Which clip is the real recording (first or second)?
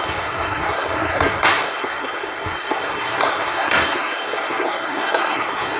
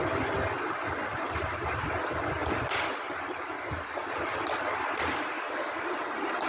second